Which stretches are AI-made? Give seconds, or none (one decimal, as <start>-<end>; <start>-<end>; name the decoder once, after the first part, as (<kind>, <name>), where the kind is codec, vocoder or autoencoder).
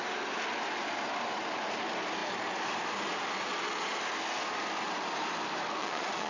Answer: 5.8-6.3 (vocoder, Vocos)